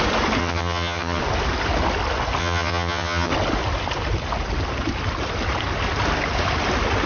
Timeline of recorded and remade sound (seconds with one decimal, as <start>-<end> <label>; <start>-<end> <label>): 0.0-0.4 recorded; 0.4-1.2 remade; 1.2-2.4 recorded; 2.4-3.3 remade; 3.3-7.1 recorded